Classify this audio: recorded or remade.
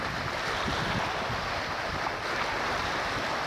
recorded